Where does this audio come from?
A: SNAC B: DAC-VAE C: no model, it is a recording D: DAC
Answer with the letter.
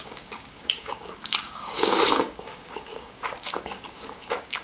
D